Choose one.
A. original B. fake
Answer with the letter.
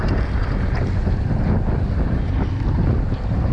A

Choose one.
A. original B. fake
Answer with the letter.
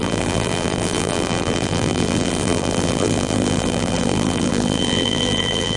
B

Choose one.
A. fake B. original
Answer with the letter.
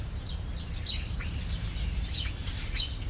A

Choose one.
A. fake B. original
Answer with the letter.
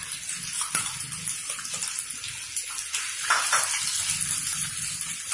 B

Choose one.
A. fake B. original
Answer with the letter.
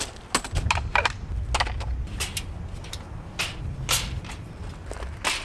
B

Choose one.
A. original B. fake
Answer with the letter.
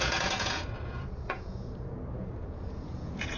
B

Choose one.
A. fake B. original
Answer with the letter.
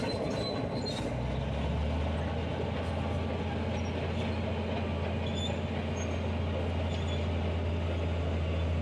B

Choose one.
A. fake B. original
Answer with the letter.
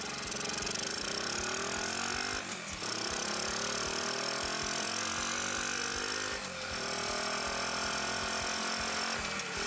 B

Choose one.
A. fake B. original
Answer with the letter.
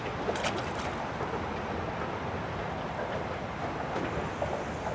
B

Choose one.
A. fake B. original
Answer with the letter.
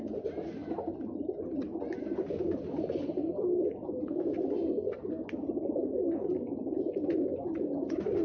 A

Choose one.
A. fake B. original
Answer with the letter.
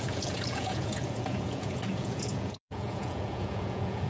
A